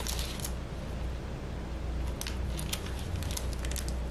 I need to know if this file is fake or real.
real